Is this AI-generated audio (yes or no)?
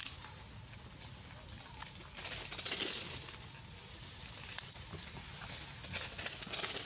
no